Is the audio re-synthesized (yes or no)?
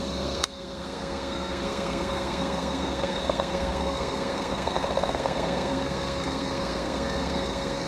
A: yes